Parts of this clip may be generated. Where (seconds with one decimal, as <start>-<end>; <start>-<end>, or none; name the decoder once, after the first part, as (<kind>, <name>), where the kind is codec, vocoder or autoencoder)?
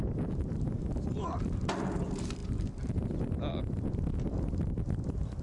none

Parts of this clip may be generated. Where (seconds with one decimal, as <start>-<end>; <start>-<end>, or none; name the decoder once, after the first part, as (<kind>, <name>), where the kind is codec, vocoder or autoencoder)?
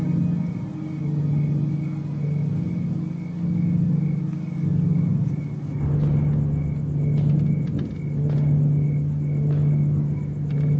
none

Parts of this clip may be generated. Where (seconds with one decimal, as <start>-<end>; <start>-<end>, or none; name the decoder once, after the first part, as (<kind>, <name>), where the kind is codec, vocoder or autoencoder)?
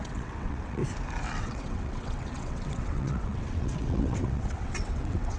0.0-0.8 (vocoder, WaveNeXt); 1.4-5.4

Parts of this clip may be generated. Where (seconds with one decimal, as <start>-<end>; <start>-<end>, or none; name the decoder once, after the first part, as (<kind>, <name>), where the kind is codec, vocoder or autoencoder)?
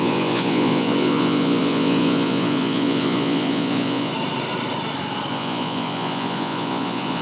0.0-4.1 (vocoder, Vocos); 5.3-7.2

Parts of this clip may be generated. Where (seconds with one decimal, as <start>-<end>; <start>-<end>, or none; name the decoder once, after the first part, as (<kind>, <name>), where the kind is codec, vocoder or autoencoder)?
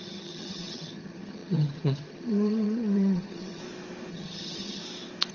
0.0-3.6 (vocoder, HiFi-GAN); 4.1-4.8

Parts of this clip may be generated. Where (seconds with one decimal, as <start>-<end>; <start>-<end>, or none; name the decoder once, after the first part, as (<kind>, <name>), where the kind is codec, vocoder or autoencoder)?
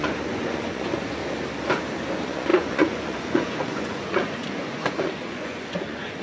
0.0-1.2 (vocoder, Vocos); 2.1-6.2